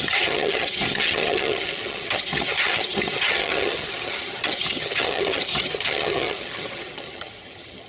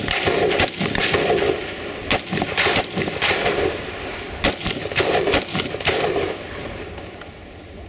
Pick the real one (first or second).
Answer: second